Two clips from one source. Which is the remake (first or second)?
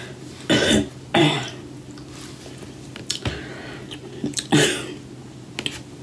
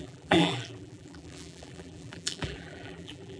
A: second